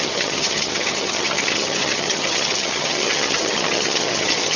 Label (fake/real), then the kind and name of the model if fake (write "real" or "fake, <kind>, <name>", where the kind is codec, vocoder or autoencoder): fake, vocoder, HiFi-GAN